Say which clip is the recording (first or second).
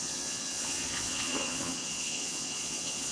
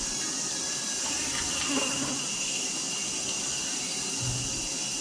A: second